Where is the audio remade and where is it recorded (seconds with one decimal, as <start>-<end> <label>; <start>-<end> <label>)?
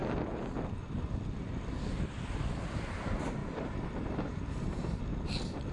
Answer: 0.0-3.4 recorded; 3.4-5.0 remade; 5.0-5.7 recorded